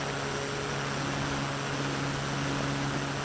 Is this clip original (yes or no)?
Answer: yes